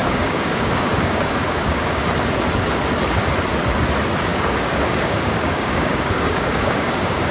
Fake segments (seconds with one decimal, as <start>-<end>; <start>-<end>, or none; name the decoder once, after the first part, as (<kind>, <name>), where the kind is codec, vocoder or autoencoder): 0.0-2.0 (codec, DAC); 4.3-7.3

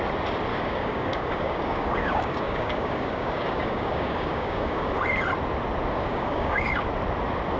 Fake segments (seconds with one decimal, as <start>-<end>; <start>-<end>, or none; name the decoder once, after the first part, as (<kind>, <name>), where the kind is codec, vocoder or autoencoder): 0.5-4.9 (codec, DAC); 6.0-6.8

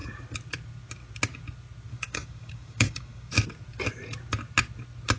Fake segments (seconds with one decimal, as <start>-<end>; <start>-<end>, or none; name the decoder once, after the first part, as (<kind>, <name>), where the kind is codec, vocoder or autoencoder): 1.9-3.3 (codec, DAC)

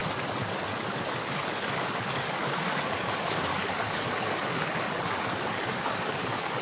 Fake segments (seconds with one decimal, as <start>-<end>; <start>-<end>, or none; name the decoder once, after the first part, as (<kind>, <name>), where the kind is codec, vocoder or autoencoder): 0.8-6.6 (codec, DAC)

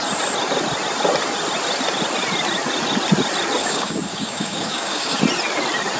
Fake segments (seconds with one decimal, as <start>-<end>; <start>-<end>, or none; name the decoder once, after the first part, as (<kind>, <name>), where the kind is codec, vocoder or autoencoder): 3.6-5.2 (codec, DAC)